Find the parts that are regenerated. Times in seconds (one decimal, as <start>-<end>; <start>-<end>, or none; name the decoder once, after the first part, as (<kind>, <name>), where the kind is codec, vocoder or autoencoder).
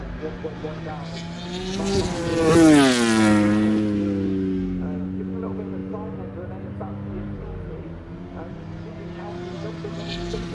none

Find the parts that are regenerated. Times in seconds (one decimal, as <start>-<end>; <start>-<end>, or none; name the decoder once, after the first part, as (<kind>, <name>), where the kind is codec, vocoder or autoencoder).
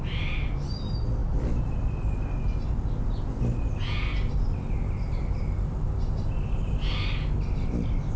none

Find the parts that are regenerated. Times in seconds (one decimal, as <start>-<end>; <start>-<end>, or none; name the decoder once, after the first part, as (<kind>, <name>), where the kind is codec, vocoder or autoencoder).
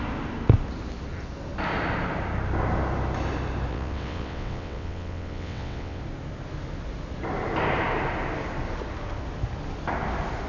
3.7-6.0 (vocoder, WaveNeXt)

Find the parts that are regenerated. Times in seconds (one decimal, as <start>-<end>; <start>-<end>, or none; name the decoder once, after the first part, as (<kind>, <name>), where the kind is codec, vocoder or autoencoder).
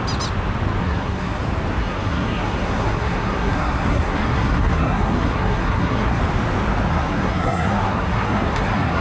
0.8-1.4 (codec, SNAC); 1.8-6.2; 6.9-9.0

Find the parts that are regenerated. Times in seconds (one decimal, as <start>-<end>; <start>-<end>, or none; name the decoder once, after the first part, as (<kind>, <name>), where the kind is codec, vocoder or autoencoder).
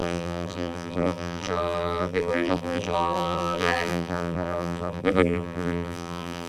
0.0-6.5 (vocoder, BigVGAN v2)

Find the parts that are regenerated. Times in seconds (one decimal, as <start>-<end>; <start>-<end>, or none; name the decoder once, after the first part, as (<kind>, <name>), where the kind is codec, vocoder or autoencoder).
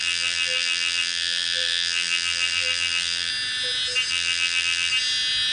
0.0-3.3 (vocoder, BigVGAN v2); 4.1-4.9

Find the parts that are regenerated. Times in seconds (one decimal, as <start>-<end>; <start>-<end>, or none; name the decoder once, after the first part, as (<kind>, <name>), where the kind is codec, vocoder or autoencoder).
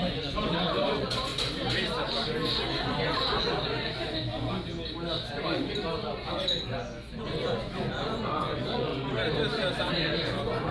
0.0-1.3 (vocoder, Vocos); 5.3-8.9; 9.9-10.7